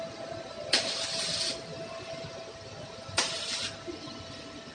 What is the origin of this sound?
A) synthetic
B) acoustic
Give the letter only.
B